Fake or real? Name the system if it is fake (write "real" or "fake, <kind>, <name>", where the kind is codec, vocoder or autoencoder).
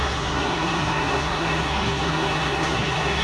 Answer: fake, codec, SNAC